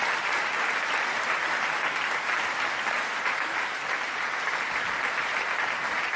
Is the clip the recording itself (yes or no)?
yes